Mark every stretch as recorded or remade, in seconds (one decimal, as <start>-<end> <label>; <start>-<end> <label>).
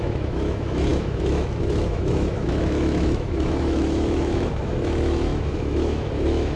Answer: 0.0-6.6 remade